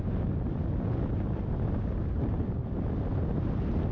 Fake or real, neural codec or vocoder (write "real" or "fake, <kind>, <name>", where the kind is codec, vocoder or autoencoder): real